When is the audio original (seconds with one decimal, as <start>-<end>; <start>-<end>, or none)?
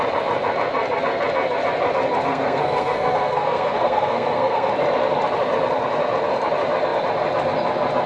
0.0-2.3; 4.7-8.1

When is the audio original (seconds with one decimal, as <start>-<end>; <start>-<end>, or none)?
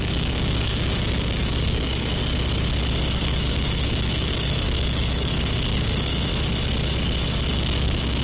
2.2-3.2; 6.3-7.5